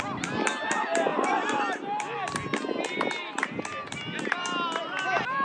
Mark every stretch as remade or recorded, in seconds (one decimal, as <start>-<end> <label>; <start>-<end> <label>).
0.0-5.4 recorded